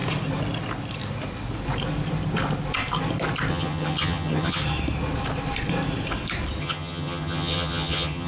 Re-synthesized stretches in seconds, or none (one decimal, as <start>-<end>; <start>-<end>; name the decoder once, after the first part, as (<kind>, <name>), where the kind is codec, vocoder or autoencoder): 3.5-4.6 (vocoder, HiFi-GAN); 6.6-8.3